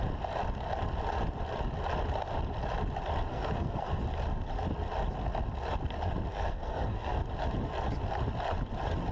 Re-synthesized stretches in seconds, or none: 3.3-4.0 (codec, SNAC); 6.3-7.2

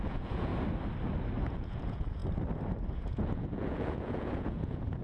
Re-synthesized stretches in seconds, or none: 0.0-0.5 (vocoder, Vocos); 1.4-2.2; 3.0-5.0

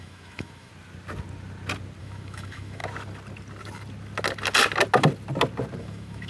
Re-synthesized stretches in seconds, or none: 0.0-0.7 (autoencoder, DAC-VAE); 2.0-2.8; 5.8-6.3

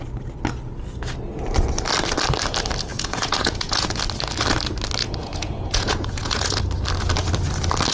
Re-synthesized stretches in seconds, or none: 2.9-4.0 (vocoder, Vocos); 5.0-6.6

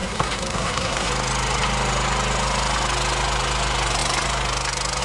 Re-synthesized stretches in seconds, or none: 0.0-1.1 (codec, SNAC)